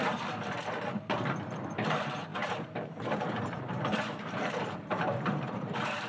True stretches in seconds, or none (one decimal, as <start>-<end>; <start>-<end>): 0.0-2.3